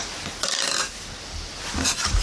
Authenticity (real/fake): real